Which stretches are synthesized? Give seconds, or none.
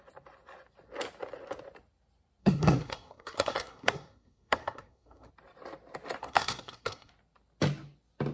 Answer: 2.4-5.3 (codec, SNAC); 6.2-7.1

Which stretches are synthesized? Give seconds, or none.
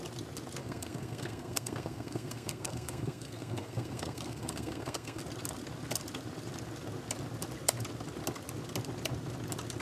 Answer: 0.6-5.2 (codec, SNAC)